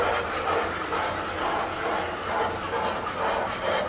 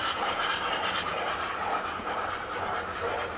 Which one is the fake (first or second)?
second